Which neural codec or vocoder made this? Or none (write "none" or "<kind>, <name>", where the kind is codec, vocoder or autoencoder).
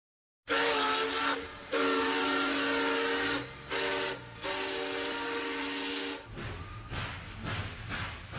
none